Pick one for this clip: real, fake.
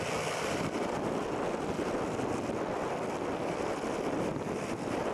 real